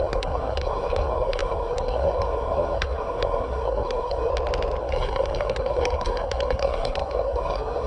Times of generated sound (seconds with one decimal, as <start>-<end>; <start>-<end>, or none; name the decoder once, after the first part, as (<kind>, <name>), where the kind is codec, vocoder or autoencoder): 0.0-4.3 (codec, SNAC); 4.8-7.9